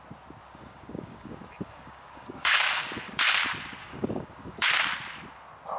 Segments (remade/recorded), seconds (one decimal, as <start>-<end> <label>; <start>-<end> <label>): 0.0-0.4 recorded; 0.4-3.4 remade; 3.4-3.8 recorded; 3.8-4.7 remade; 4.7-5.8 recorded